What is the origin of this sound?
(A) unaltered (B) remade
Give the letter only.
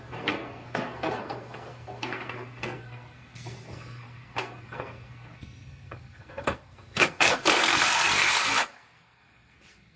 B